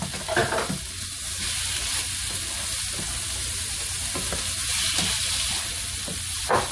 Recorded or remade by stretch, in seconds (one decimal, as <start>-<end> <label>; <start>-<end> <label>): 0.0-6.7 recorded

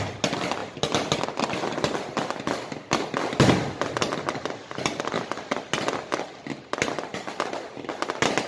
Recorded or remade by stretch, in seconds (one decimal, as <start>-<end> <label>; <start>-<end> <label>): 0.0-8.5 recorded

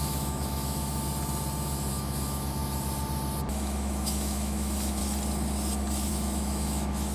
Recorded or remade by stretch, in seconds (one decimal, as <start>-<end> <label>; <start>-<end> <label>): 0.0-0.9 remade; 0.9-1.9 recorded; 1.9-2.6 remade; 2.6-3.5 recorded; 3.5-5.0 remade; 5.0-6.1 recorded; 6.1-7.1 remade

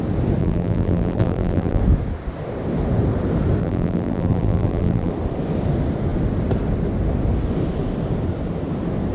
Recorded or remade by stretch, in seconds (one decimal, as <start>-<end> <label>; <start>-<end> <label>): 0.0-0.4 recorded; 0.4-1.8 remade; 1.8-3.6 recorded; 3.6-5.1 remade; 5.1-9.1 recorded

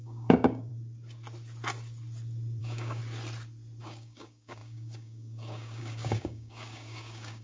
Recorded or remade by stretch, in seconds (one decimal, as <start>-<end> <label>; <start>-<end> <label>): 0.0-0.7 remade; 0.7-2.6 recorded; 2.6-3.0 remade; 3.0-3.8 recorded; 3.8-7.4 remade